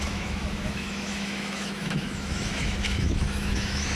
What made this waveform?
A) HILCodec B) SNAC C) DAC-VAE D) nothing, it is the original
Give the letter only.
C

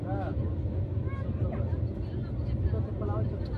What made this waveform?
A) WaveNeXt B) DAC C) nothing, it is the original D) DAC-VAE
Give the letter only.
C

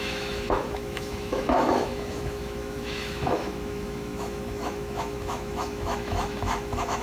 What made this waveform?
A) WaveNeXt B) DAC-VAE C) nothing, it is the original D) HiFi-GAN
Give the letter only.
B